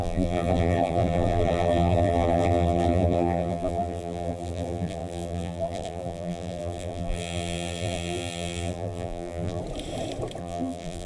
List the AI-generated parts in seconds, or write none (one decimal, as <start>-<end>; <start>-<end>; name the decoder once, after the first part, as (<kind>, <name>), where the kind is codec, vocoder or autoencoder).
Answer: 0.0-9.6 (vocoder, BigVGAN v2); 10.4-11.1